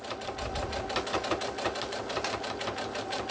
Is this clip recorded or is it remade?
recorded